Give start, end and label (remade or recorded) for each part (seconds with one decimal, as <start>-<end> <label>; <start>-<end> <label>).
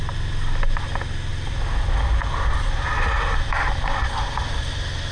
0.0-5.1 recorded